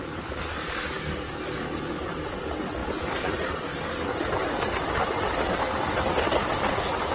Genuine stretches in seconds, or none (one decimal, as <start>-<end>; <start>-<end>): 0.0-7.1

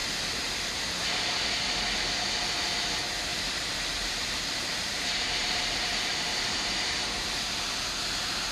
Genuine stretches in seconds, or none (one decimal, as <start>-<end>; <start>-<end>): 1.1-3.3; 8.0-8.5

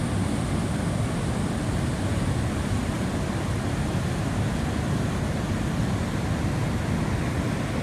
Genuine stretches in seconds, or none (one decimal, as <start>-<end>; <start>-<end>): 0.0-7.8

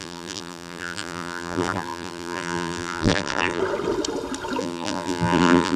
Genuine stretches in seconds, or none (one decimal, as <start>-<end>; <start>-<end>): 3.6-4.6